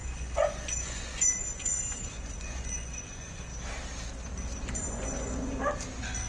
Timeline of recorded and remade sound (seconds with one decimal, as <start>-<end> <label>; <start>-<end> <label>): 0.0-3.5 remade; 3.5-4.6 recorded; 4.6-5.6 remade; 5.6-6.3 recorded